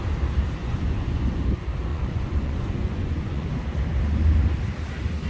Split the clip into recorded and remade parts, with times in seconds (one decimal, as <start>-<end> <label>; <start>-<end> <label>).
0.0-0.6 recorded; 0.6-1.2 remade; 1.2-1.9 recorded; 1.9-3.5 remade; 3.5-5.3 recorded